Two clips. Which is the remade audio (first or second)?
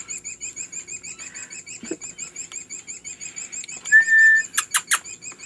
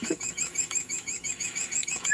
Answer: second